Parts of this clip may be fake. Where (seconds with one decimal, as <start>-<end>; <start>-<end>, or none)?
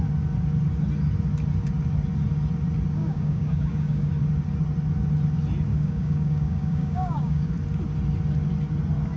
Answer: 3.0-4.1; 5.7-7.5